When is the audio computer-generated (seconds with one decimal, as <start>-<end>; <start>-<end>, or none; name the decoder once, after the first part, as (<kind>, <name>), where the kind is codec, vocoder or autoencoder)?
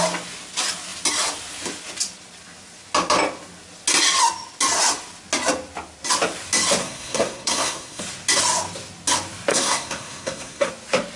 6.8-8.0 (codec, SNAC); 9.5-10.7